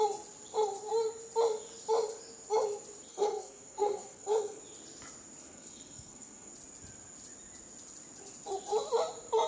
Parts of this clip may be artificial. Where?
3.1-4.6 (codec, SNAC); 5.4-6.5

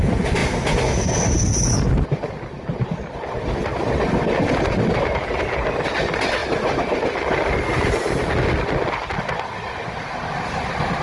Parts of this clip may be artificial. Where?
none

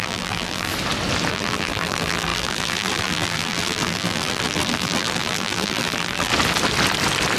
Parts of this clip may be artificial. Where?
0.0-0.7 (vocoder, BigVGAN v2); 1.3-6.3